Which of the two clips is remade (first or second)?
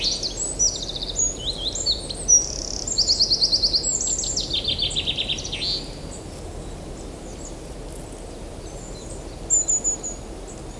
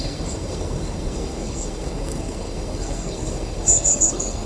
second